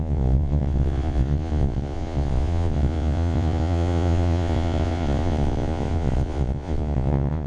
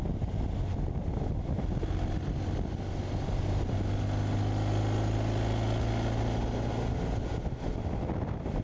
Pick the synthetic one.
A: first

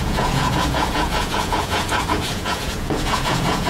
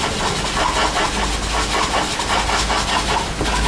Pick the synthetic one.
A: first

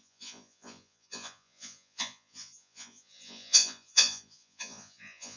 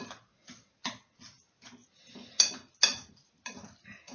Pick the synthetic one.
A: first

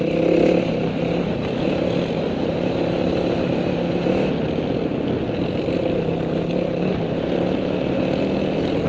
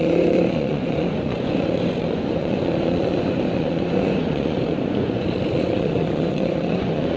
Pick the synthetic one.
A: second